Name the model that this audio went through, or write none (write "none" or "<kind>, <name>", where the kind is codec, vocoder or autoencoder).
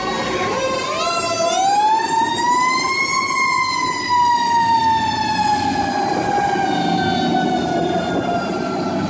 none